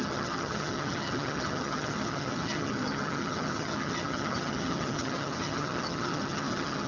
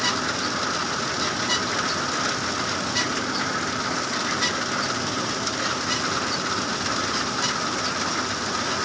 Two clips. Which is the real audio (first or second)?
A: second